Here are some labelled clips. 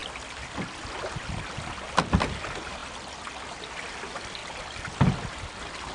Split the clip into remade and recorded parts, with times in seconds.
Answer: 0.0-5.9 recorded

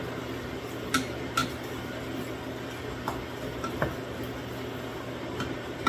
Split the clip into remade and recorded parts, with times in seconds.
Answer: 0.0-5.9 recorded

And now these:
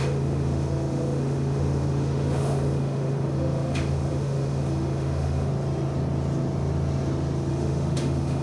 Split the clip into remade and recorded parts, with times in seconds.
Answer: 0.0-5.5 remade; 5.5-7.5 recorded; 7.5-8.4 remade